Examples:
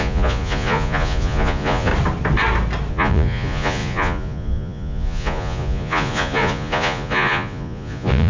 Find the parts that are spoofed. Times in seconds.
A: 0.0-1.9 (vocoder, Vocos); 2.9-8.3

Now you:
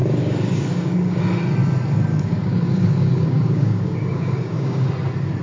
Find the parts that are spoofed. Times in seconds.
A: 0.0-1.2 (codec, DAC); 2.1-4.9

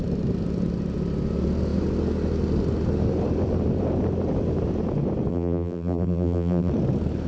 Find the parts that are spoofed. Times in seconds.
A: 5.3-6.7 (vocoder, BigVGAN v2)

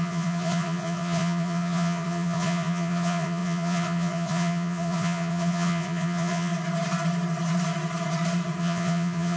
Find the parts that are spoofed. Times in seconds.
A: 0.0-6.5 (vocoder, Vocos); 8.6-9.4

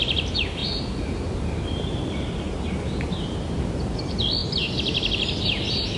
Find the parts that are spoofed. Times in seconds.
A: 0.6-4.0 (vocoder, BigVGAN v2)

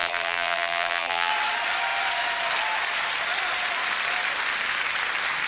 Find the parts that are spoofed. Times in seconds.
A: 0.0-1.3 (vocoder, BigVGAN v2)

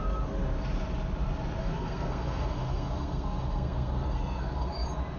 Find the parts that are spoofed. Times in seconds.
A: 1.6-4.7 (codec, SNAC)

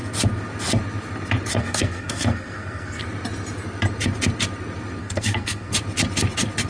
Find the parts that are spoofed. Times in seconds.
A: 1.5-3.0 (codec, SNAC); 5.0-5.7